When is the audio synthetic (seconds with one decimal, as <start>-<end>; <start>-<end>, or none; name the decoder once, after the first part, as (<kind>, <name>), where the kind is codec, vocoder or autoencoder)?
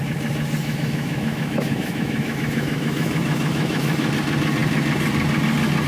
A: 0.6-4.1 (autoencoder, DAC-VAE)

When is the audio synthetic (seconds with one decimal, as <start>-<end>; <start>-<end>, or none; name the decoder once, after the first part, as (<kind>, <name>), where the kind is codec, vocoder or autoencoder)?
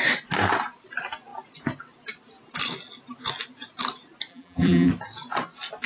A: 4.3-4.9 (vocoder, BigVGAN v2)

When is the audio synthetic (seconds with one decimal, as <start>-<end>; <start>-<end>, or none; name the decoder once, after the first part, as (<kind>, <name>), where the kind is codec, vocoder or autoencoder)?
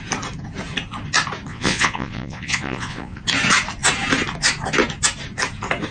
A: 1.5-3.2 (vocoder, Vocos)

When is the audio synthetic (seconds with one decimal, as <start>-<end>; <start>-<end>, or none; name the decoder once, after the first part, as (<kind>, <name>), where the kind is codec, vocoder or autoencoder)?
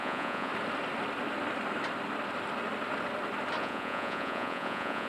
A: 0.0-0.5 (vocoder, Vocos); 3.6-5.1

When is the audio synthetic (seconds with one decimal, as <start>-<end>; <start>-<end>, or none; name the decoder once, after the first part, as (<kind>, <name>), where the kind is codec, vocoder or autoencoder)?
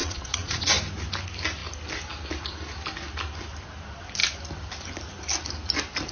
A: 0.0-0.7 (vocoder, Vocos)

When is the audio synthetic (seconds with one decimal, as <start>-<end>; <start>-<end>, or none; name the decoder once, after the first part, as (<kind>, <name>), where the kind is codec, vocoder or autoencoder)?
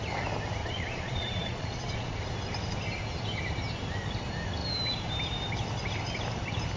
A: 0.6-2.2 (vocoder, Vocos)